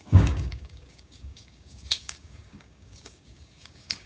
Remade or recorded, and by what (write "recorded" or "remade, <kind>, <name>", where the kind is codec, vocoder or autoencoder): remade, codec, DAC